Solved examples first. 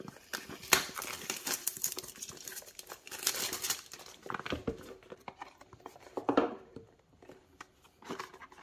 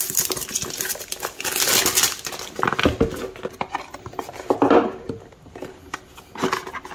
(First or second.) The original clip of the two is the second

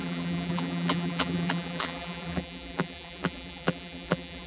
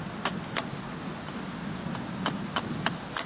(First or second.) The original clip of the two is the second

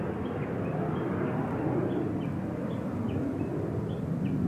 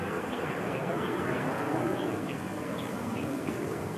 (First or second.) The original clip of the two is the first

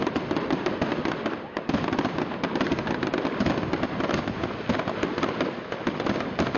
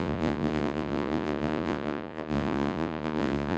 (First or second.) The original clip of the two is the first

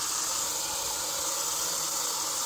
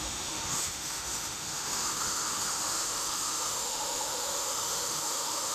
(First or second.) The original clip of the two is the first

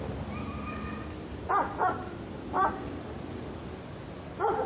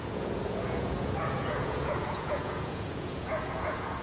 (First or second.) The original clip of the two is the first